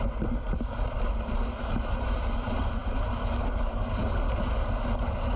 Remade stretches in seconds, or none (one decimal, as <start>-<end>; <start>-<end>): none